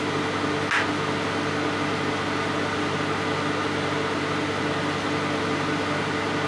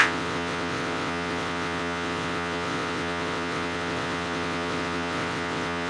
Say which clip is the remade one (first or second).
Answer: second